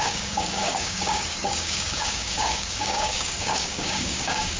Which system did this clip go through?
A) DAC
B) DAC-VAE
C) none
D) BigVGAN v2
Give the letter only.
A